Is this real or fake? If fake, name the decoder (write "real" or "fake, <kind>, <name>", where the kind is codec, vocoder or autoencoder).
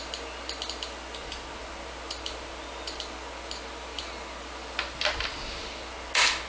real